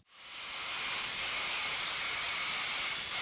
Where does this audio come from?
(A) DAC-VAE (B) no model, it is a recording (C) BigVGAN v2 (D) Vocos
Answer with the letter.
B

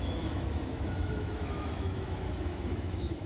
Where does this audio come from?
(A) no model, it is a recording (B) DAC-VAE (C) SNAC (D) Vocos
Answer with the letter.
B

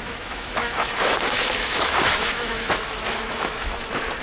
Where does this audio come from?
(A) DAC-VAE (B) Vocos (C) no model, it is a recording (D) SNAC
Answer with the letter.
A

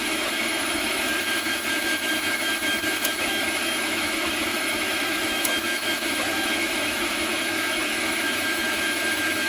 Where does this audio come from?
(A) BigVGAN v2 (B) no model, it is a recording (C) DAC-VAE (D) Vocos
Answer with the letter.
C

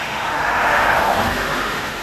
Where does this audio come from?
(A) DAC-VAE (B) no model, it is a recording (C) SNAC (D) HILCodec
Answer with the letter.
A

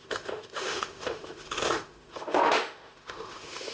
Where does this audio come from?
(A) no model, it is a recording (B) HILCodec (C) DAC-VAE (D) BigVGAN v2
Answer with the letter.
C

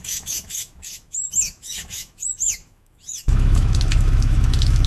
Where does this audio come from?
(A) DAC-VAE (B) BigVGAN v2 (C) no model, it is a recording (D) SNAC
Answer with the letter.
A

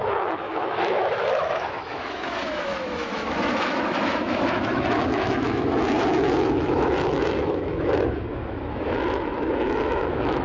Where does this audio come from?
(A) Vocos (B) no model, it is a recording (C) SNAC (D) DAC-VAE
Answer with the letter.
D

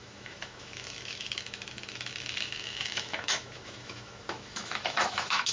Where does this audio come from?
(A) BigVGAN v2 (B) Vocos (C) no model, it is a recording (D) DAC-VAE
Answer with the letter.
D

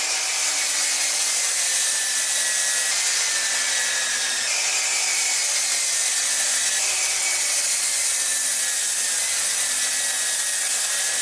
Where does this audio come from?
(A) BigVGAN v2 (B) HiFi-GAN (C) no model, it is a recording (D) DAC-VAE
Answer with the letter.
C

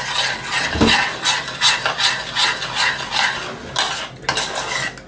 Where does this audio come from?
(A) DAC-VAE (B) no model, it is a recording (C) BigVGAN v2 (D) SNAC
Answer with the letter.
B